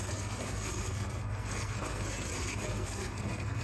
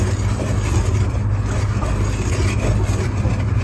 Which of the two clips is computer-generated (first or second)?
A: first